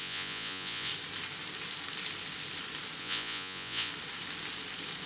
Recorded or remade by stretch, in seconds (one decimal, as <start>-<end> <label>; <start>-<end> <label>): 0.0-0.9 remade; 0.9-3.0 recorded; 3.0-3.9 remade; 3.9-5.1 recorded